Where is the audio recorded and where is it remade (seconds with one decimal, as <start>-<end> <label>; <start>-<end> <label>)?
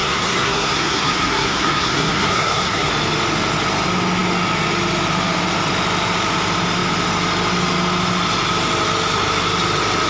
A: 0.0-2.9 remade; 2.9-10.1 recorded